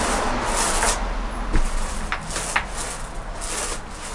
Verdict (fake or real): real